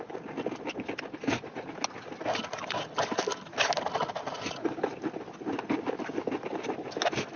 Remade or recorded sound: recorded